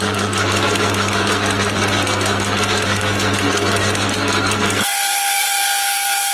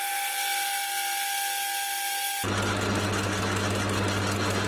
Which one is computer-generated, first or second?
first